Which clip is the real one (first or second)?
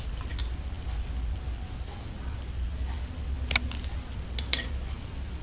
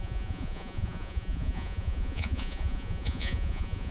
first